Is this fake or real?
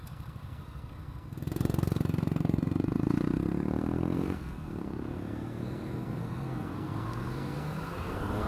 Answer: fake